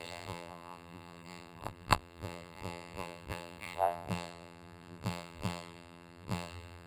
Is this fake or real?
fake